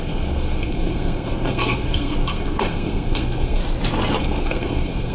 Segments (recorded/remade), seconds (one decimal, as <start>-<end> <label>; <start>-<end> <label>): 0.0-3.6 remade; 3.6-4.2 recorded; 4.2-5.1 remade